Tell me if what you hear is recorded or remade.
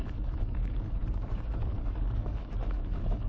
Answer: remade